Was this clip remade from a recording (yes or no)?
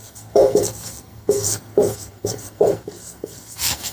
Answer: yes